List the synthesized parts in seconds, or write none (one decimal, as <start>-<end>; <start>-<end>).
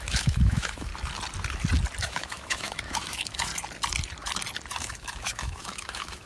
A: 0.0-0.9; 2.0-3.5; 4.8-6.3